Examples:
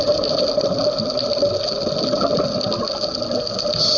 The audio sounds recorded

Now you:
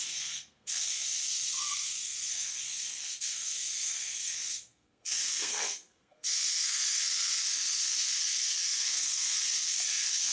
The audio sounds remade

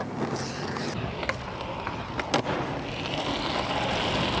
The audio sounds recorded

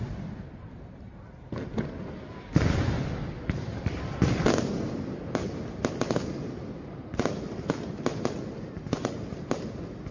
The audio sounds recorded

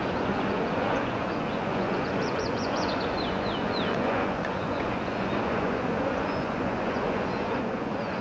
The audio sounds remade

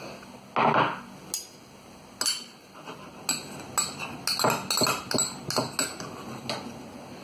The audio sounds recorded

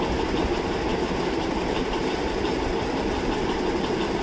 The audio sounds recorded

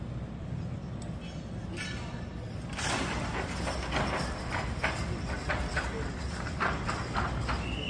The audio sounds recorded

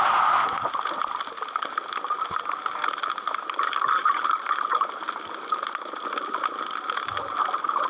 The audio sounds remade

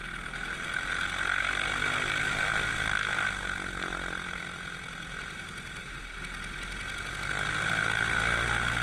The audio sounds recorded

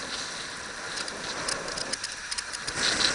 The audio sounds recorded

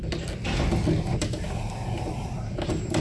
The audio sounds recorded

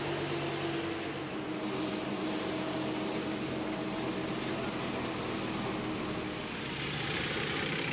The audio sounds recorded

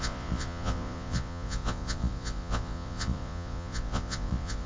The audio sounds remade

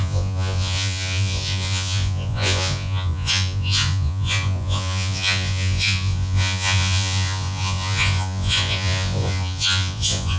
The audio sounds remade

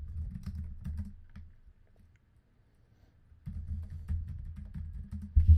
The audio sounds recorded